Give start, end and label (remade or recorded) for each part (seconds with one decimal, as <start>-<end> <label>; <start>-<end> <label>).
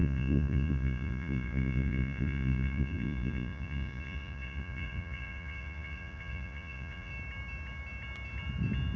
0.0-7.1 remade; 7.1-9.0 recorded